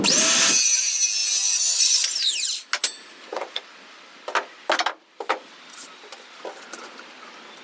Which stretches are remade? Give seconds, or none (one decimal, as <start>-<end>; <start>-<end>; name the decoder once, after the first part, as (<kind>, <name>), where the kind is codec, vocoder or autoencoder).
2.9-3.6 (vocoder, Vocos)